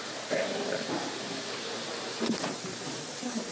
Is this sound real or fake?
real